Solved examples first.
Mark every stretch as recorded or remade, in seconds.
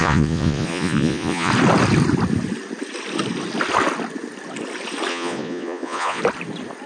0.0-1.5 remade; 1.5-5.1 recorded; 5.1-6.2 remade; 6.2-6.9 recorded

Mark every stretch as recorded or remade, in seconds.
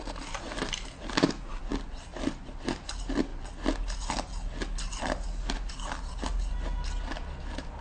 0.0-7.8 recorded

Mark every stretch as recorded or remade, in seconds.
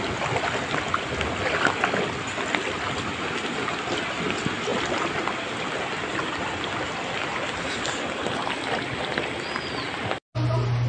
0.0-10.9 recorded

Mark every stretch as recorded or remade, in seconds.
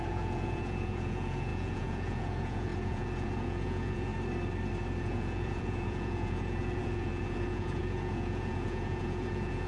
0.0-4.1 remade; 4.1-5.0 recorded; 5.0-9.7 remade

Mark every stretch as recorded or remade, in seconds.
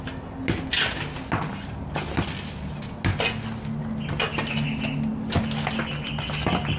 0.0-6.8 recorded